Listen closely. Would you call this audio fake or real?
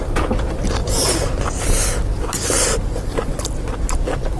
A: real